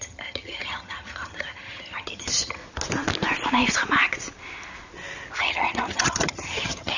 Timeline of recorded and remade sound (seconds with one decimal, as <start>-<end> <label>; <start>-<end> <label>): 0.0-2.6 remade; 2.6-5.4 recorded; 5.4-7.0 remade